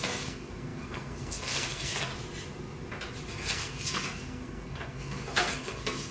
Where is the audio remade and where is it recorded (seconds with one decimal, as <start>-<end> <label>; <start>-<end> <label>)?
0.0-2.1 remade; 2.1-3.3 recorded; 3.3-6.1 remade

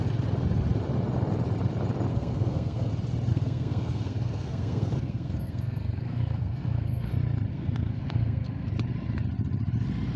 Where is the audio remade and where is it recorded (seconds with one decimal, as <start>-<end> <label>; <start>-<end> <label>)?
0.0-2.1 recorded; 2.1-2.9 remade; 2.9-3.3 recorded; 3.3-7.1 remade; 7.1-7.5 recorded; 7.5-8.7 remade; 8.7-10.2 recorded

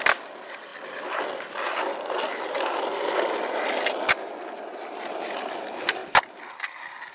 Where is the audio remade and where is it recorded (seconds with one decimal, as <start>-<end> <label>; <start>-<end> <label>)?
0.0-7.1 recorded

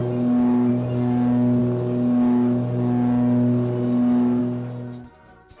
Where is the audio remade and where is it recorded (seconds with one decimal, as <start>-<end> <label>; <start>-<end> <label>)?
0.0-5.6 recorded

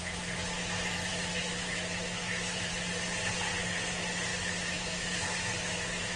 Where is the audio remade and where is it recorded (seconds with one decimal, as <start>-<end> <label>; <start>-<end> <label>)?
0.0-1.1 recorded; 1.1-2.7 remade; 2.7-4.3 recorded; 4.3-6.2 remade

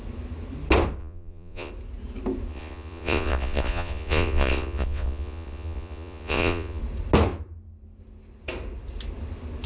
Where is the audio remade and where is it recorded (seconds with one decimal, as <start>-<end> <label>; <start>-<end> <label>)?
0.0-1.0 recorded; 1.0-1.7 remade; 1.7-2.5 recorded; 2.5-6.8 remade; 6.8-9.7 recorded

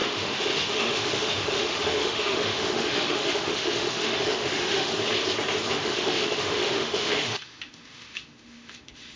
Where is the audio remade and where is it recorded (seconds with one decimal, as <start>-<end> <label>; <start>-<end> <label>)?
0.0-4.9 remade; 4.9-5.7 recorded; 5.7-9.2 remade

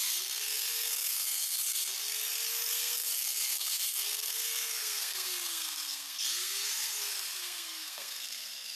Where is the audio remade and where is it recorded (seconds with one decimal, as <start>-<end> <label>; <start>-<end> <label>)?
0.0-1.9 remade; 1.9-2.7 recorded; 2.7-8.7 remade